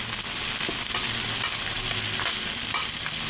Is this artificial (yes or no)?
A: no